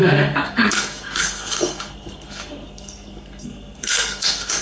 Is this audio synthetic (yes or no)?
yes